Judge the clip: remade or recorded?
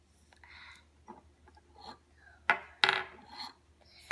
recorded